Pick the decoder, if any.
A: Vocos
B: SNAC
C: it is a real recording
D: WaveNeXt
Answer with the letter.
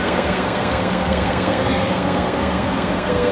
B